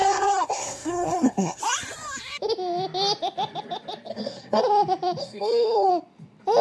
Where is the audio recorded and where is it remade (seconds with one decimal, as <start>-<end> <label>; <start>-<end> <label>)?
0.0-1.6 remade; 1.6-4.1 recorded; 4.1-4.6 remade; 4.6-5.2 recorded; 5.2-5.9 remade; 5.9-6.6 recorded